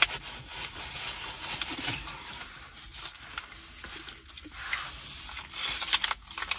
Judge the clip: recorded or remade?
recorded